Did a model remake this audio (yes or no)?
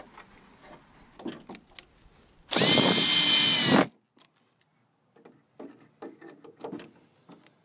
no